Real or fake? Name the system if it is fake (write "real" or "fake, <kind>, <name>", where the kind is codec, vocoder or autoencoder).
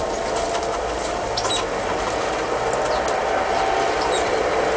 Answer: real